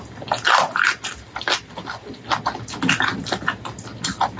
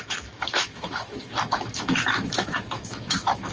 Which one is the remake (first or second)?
second